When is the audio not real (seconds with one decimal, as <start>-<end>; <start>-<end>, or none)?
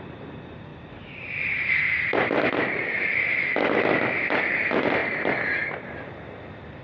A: 0.7-3.6